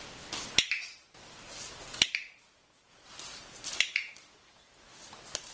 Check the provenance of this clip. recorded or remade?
recorded